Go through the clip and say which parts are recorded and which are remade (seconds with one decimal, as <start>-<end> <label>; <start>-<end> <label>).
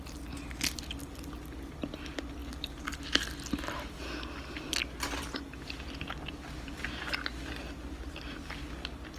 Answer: 0.0-9.2 recorded